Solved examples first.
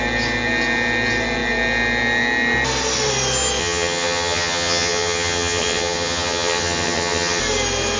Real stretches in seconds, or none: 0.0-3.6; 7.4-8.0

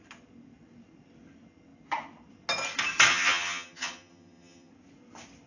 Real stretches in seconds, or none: 0.0-3.1; 4.7-5.5

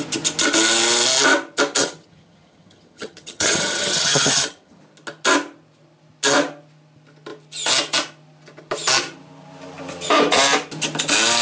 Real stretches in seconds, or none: 0.0-1.8; 4.8-11.4

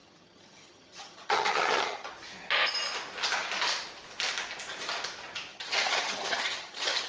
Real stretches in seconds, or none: 2.1-5.5

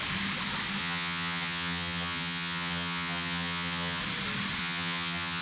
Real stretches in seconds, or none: 0.0-0.8; 4.0-4.6